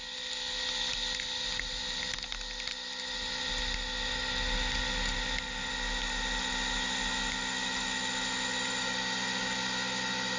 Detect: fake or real real